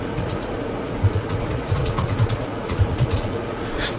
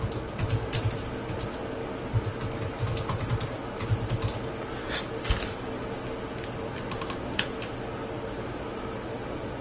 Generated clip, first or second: first